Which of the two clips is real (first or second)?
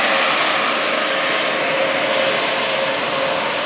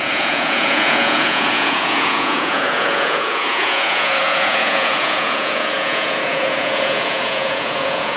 first